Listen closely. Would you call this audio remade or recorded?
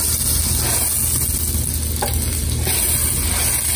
recorded